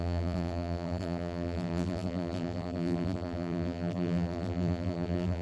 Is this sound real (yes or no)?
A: no